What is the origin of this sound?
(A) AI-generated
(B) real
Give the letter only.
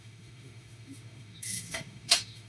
A